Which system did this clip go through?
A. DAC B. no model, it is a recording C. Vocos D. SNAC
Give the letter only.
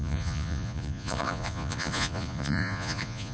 C